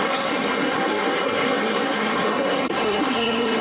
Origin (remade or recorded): remade